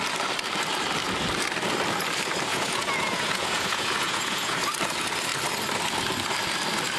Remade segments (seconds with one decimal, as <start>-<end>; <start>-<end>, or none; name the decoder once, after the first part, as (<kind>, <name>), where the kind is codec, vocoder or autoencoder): 2.5-4.6 (vocoder, Vocos)